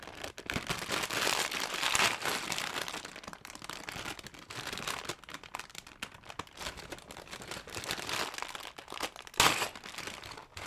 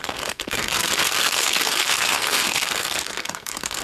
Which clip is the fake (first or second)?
second